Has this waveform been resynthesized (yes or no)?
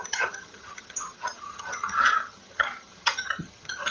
yes